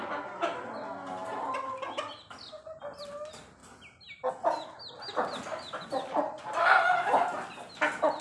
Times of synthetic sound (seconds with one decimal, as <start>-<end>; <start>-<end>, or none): none